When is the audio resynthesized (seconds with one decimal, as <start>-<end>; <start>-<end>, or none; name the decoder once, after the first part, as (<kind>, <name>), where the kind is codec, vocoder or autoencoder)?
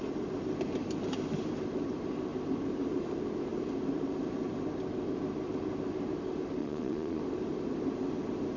6.6-7.2 (vocoder, Vocos)